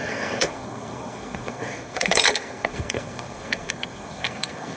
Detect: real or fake fake